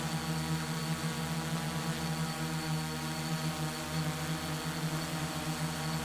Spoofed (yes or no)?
no